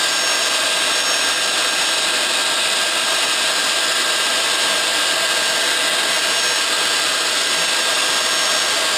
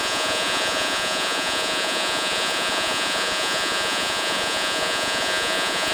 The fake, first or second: second